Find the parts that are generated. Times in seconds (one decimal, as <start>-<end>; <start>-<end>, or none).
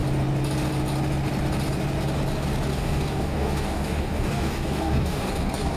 2.7-5.8